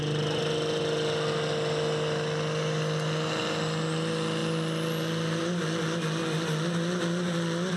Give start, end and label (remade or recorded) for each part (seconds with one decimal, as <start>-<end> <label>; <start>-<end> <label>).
0.0-7.8 recorded